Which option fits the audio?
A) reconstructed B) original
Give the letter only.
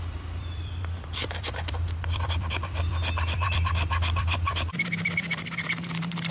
A